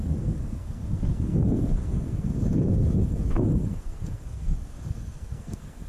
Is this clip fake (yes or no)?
yes